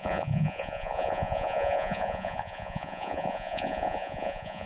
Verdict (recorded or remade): remade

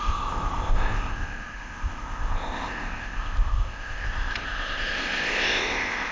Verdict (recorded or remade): remade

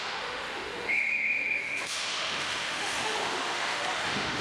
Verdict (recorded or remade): remade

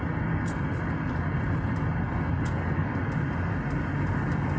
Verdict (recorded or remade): recorded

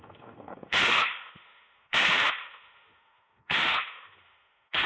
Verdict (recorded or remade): remade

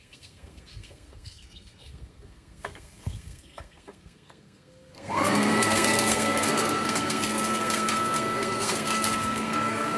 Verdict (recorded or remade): remade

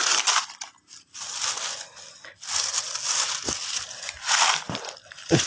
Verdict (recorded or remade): recorded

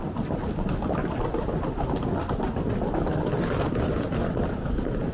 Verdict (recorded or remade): recorded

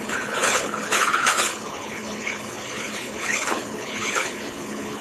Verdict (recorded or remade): remade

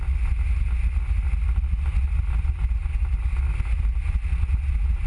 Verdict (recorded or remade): recorded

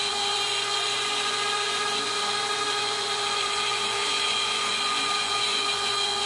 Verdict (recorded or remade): remade